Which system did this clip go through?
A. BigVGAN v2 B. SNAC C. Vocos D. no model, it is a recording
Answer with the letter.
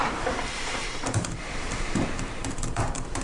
A